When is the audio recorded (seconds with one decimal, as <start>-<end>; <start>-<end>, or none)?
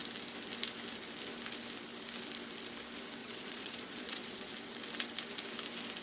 0.0-3.2; 4.5-6.0